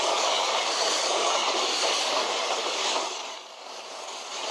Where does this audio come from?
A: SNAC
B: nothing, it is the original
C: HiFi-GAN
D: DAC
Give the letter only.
D